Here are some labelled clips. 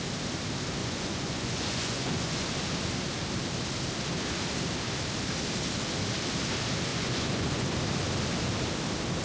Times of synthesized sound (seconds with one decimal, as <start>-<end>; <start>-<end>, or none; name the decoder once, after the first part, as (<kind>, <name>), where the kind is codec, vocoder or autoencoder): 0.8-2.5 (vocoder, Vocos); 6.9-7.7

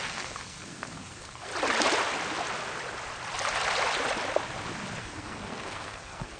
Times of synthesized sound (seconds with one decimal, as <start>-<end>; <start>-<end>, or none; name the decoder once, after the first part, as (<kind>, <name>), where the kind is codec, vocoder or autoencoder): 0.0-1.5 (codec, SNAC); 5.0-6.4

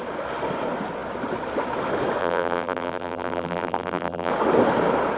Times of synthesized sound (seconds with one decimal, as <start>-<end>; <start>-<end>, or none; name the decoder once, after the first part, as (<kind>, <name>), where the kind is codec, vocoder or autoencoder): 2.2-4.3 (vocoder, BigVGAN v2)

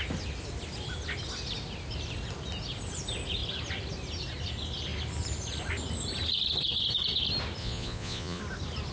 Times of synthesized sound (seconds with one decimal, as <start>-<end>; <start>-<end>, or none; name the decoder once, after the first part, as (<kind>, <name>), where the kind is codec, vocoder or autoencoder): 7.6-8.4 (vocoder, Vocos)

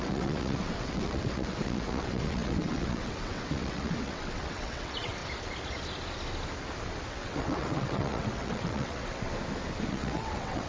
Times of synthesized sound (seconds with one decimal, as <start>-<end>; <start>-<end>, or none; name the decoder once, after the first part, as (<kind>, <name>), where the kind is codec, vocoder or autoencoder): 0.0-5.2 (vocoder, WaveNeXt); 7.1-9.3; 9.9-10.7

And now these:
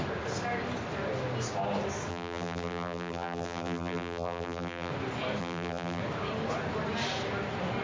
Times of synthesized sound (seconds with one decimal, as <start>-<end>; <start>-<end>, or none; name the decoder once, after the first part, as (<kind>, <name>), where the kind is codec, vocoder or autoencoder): 2.1-4.9 (vocoder, BigVGAN v2); 5.4-6.0